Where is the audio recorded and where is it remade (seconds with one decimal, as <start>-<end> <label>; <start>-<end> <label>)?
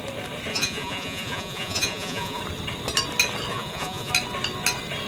0.0-0.5 recorded; 0.5-2.4 remade; 2.4-3.5 recorded; 3.5-4.1 remade; 4.1-5.1 recorded